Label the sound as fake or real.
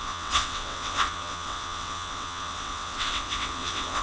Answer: fake